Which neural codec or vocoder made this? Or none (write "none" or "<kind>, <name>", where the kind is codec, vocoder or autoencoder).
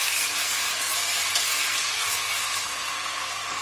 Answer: codec, SNAC